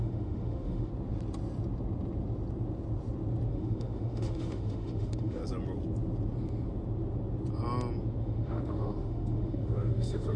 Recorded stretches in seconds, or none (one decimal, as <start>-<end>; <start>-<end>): 0.9-3.5; 5.4-8.2